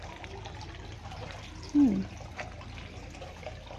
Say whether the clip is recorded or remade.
recorded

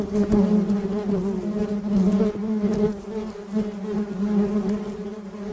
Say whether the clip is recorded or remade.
recorded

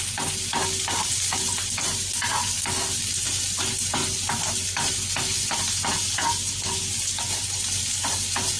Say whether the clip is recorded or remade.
recorded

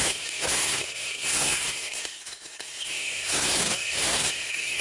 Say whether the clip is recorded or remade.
remade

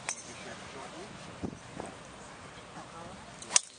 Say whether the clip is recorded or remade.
recorded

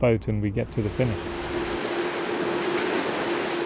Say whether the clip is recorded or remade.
recorded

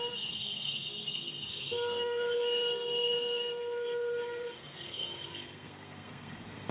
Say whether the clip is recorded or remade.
remade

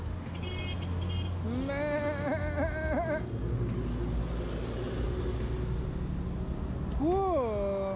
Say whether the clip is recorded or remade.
recorded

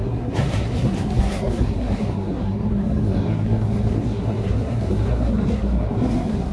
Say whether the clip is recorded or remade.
remade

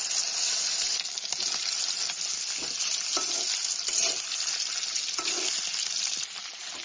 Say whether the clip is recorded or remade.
recorded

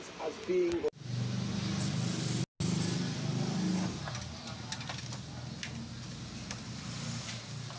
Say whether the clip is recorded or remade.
recorded